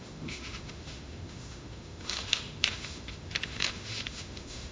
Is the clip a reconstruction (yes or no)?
yes